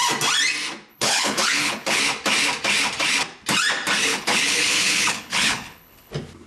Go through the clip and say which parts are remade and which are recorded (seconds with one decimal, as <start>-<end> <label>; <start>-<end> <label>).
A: 0.0-0.9 recorded; 0.9-2.0 remade; 2.0-4.0 recorded; 4.0-6.1 remade; 6.1-6.5 recorded